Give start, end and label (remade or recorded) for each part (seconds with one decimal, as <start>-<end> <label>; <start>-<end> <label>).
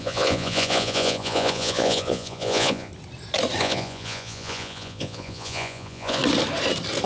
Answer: 0.0-2.9 remade; 2.9-3.6 recorded; 3.6-6.2 remade; 6.2-7.1 recorded